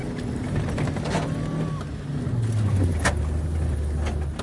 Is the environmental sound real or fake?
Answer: real